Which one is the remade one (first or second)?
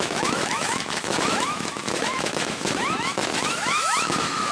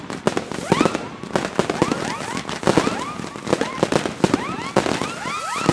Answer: first